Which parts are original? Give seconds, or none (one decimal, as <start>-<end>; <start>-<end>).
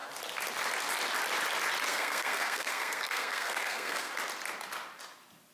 0.0-1.9; 4.1-5.5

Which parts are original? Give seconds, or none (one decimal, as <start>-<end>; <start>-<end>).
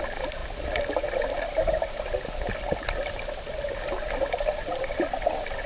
0.0-5.7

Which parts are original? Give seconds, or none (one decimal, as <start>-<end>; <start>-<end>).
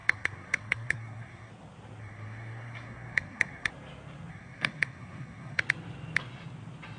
1.5-2.0; 3.7-4.3; 5.6-7.0